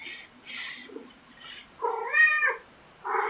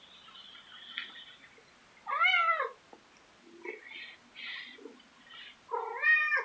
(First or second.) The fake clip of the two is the first